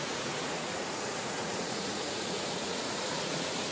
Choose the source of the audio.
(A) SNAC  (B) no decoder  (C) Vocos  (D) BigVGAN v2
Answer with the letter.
C